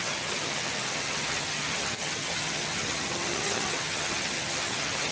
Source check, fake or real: fake